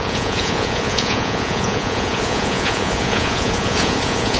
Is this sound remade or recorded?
remade